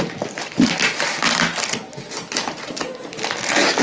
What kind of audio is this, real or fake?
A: real